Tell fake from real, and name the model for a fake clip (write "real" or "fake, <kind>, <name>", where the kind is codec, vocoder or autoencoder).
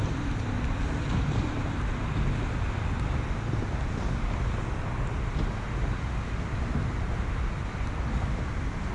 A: real